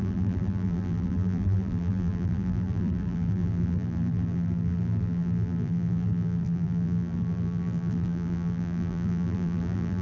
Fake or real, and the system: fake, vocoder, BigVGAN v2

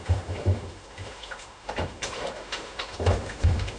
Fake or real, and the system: fake, autoencoder, DAC-VAE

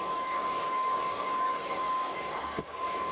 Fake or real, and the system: fake, codec, DAC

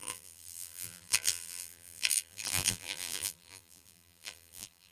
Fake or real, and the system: fake, vocoder, BigVGAN v2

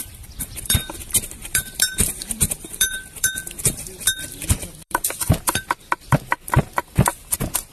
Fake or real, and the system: fake, vocoder, BigVGAN v2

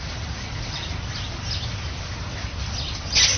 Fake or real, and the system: real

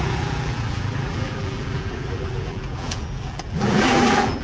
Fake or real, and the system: fake, vocoder, BigVGAN v2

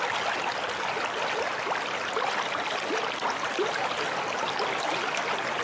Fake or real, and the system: real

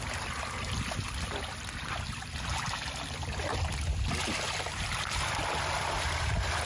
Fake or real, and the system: real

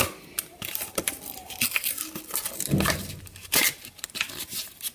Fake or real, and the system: real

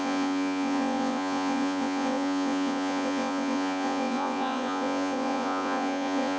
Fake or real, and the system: fake, vocoder, Vocos